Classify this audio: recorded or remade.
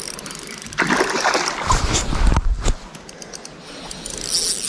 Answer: recorded